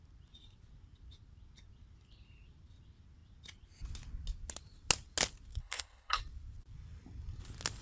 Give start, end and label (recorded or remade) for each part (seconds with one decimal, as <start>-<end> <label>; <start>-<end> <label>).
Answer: 0.0-5.6 recorded; 5.6-6.2 remade; 6.2-7.8 recorded